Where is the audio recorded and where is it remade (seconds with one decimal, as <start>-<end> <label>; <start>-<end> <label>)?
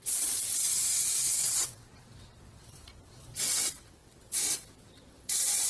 0.0-0.7 remade; 0.7-1.3 recorded; 1.3-5.7 remade